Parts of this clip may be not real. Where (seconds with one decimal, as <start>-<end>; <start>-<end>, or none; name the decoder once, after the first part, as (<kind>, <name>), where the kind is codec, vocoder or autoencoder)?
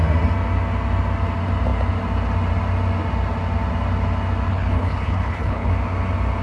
4.5-5.7 (codec, HILCodec)